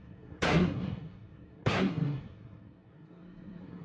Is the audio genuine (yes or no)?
no